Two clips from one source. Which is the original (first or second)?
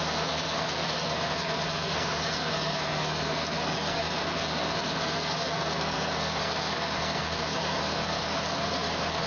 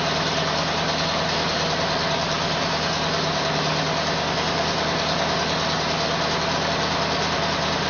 second